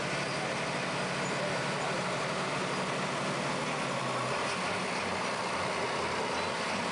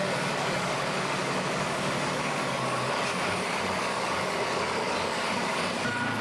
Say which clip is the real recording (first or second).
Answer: first